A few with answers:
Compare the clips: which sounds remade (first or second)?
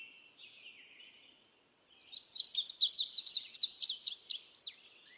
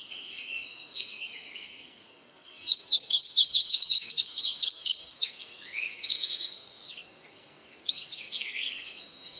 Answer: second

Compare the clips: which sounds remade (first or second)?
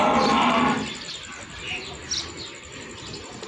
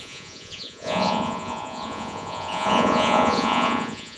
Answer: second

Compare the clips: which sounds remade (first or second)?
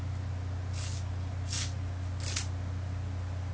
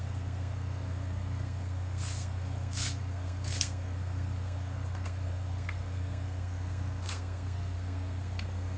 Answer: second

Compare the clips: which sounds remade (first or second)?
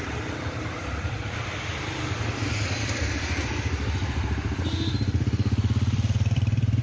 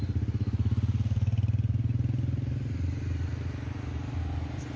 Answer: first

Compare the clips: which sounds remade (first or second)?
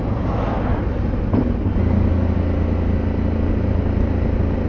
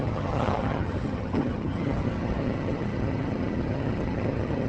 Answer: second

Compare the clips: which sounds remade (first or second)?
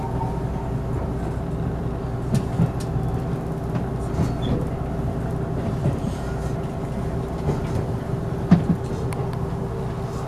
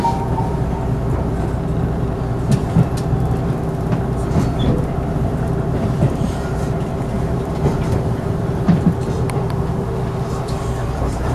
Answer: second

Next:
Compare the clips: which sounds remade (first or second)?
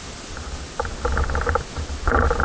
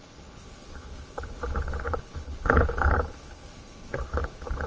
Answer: second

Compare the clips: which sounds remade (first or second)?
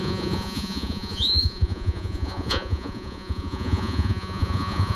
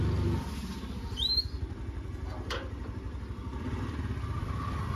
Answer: first